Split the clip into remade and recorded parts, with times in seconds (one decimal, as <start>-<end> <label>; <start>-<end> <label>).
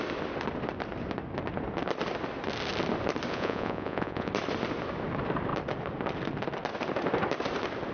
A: 0.0-3.3 recorded; 3.3-4.3 remade; 4.3-7.9 recorded